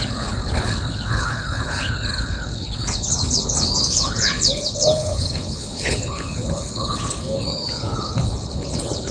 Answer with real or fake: fake